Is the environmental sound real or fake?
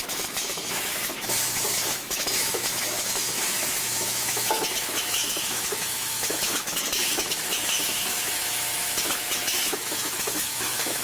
fake